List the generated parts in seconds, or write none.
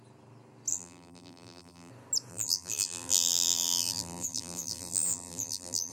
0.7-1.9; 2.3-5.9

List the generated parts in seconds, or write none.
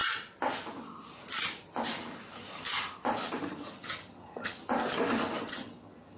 3.4-4.6; 5.5-6.2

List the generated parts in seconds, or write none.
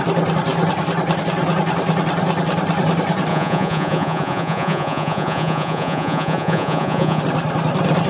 3.3-7.2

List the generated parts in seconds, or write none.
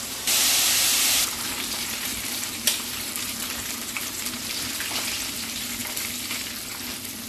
0.9-4.7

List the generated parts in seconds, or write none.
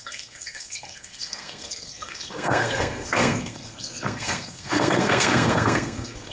0.0-6.3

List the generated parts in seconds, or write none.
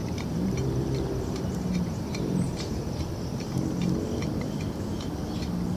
0.0-3.5